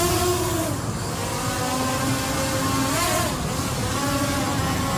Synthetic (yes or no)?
no